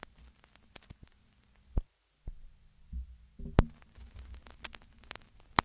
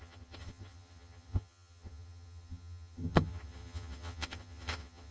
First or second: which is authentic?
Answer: first